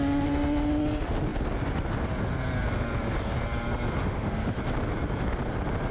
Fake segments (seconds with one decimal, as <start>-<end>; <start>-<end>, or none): 4.0-4.6